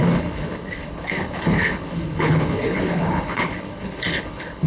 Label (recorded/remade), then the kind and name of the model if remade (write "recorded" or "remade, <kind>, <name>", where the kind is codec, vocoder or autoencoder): remade, codec, HILCodec